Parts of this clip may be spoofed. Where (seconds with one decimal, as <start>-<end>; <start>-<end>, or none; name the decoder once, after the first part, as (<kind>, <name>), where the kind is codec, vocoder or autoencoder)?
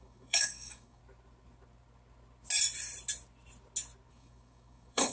0.0-1.0 (codec, DAC); 4.1-5.1